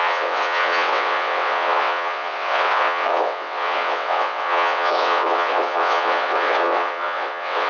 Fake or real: fake